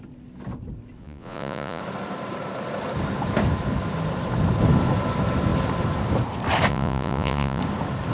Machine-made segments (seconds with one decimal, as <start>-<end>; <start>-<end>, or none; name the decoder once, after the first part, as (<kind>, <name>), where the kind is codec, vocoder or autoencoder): 1.0-1.8 (vocoder, Vocos); 6.7-7.6